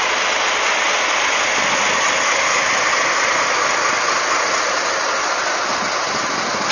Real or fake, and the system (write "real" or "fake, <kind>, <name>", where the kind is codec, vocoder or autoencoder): real